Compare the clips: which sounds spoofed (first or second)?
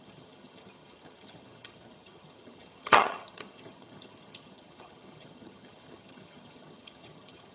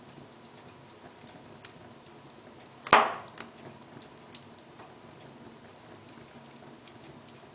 first